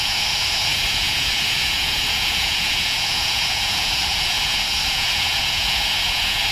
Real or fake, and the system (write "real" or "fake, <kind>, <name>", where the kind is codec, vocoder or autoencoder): fake, vocoder, Vocos